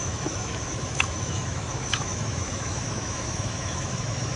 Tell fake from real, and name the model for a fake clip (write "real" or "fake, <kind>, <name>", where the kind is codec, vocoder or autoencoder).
fake, autoencoder, DAC-VAE